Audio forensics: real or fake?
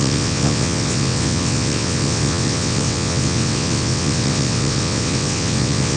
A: fake